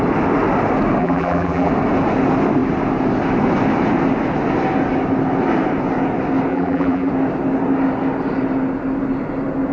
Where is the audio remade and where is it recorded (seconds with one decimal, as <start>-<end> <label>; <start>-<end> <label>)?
0.0-1.0 recorded; 1.0-1.7 remade; 1.7-6.5 recorded; 6.5-7.1 remade; 7.1-9.7 recorded